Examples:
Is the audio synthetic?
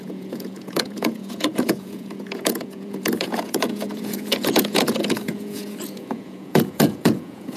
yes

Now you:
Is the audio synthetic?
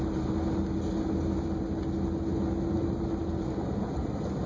no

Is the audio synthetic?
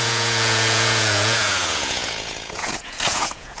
yes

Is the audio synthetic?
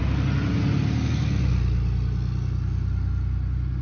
no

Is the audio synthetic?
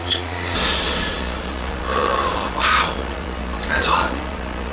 yes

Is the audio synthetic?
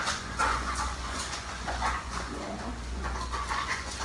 yes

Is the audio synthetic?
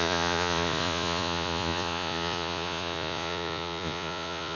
yes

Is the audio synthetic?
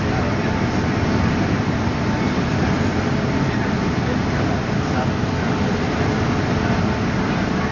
no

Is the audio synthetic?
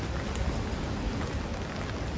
no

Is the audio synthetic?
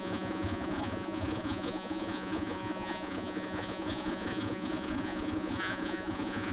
yes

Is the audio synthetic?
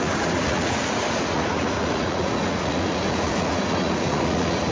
yes